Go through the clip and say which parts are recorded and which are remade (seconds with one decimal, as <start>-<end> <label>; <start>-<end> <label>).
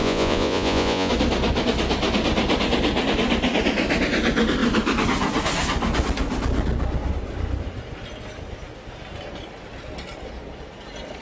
0.0-1.1 remade; 1.1-11.2 recorded